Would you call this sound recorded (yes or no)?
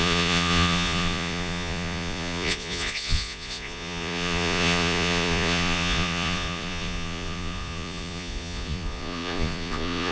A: no